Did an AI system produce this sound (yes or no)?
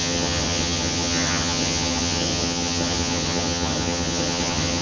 yes